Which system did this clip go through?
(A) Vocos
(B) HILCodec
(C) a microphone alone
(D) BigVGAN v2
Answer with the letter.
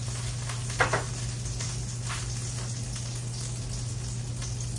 C